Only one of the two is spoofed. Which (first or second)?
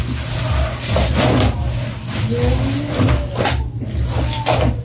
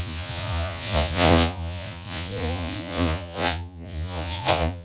second